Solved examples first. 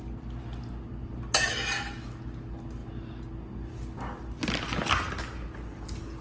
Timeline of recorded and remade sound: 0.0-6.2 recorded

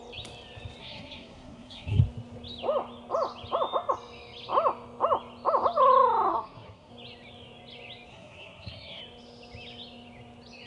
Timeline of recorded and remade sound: 0.0-0.8 recorded; 0.8-2.0 remade; 2.0-6.3 recorded; 6.3-6.9 remade; 6.9-8.1 recorded; 8.1-9.0 remade; 9.0-10.7 recorded

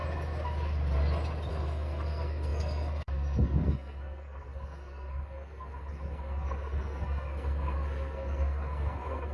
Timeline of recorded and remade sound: 0.0-1.5 recorded; 1.5-9.3 remade

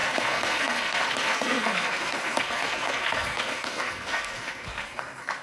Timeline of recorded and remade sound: 0.0-5.4 remade